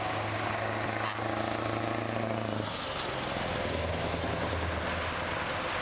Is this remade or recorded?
recorded